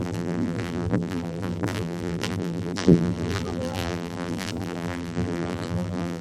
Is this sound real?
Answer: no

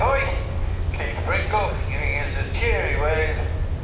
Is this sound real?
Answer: yes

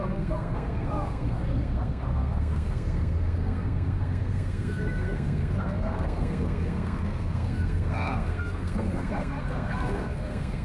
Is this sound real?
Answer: no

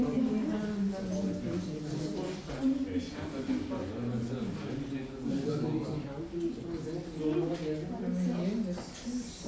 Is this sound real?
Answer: yes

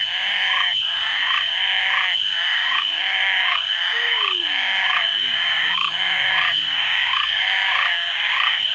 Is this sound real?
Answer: no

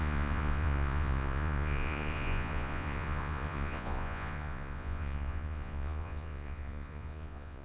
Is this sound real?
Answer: no